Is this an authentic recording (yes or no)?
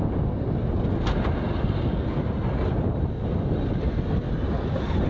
yes